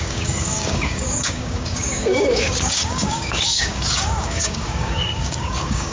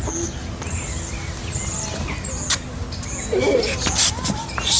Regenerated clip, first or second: first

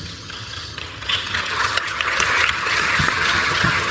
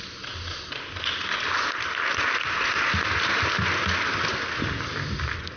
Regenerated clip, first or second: first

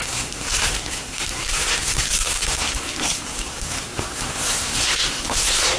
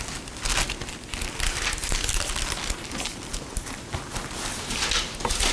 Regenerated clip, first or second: first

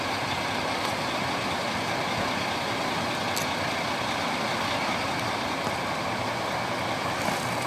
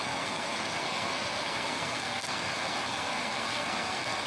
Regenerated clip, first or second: second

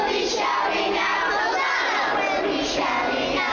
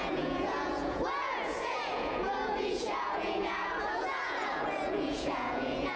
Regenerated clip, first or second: second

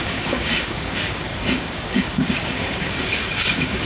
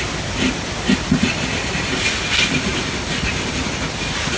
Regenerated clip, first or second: first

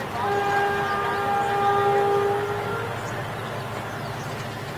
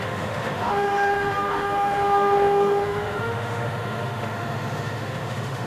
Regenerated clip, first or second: second